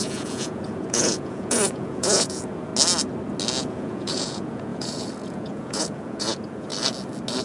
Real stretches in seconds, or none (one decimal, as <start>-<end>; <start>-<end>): 2.7-3.6; 6.7-7.4